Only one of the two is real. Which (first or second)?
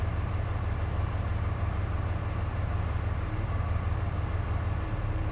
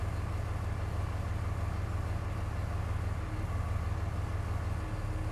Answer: second